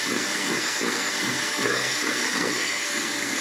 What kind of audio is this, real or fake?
fake